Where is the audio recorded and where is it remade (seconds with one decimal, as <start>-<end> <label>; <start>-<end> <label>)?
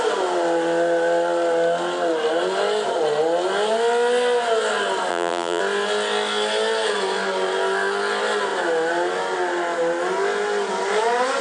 0.0-5.1 recorded; 5.1-5.6 remade; 5.6-11.4 recorded